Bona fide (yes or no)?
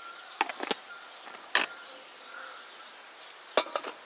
yes